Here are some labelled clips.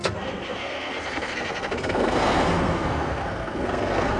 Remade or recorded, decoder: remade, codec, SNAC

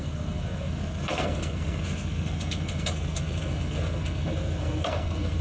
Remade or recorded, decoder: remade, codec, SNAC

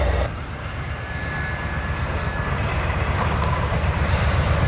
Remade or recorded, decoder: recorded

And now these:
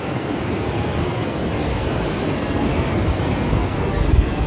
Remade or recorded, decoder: remade, codec, SNAC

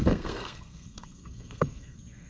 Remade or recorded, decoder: remade, codec, SNAC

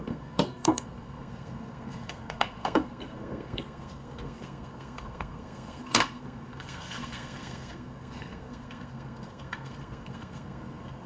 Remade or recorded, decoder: remade, codec, SNAC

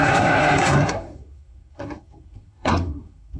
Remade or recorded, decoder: remade, codec, SNAC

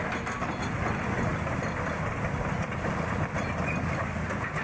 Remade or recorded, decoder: recorded